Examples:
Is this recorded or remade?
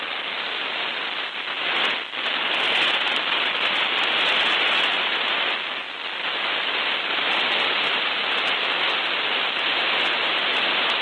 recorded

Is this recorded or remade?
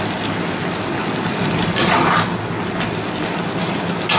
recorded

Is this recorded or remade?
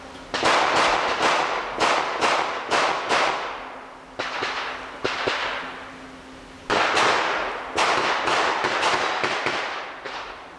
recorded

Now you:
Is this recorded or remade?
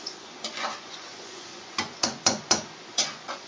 remade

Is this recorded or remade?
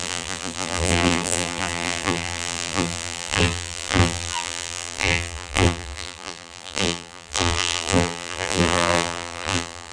remade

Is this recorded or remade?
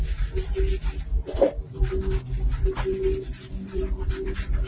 recorded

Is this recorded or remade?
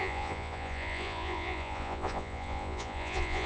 remade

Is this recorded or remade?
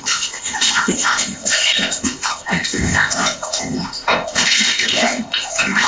remade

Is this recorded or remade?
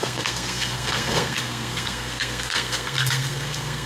remade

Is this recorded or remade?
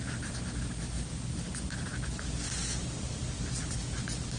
recorded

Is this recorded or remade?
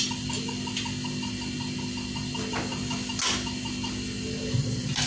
recorded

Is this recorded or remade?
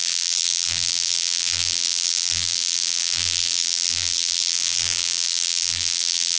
remade